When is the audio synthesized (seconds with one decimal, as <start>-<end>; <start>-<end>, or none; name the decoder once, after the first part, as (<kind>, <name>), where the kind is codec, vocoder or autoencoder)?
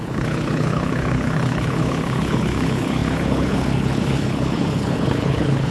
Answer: 0.0-5.7 (codec, HILCodec)